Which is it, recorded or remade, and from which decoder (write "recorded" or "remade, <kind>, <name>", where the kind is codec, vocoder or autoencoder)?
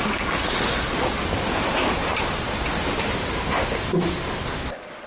recorded